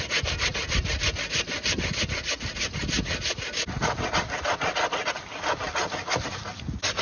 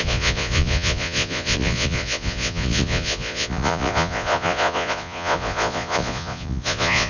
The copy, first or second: second